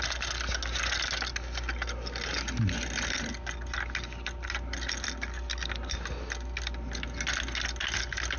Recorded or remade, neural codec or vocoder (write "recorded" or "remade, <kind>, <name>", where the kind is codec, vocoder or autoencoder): recorded